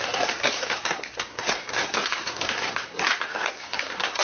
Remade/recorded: remade